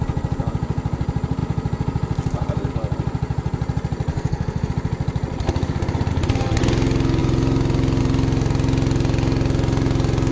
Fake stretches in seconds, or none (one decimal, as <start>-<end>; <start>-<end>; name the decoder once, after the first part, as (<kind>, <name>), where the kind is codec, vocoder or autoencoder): 4.1-4.7 (codec, SNAC); 6.1-6.6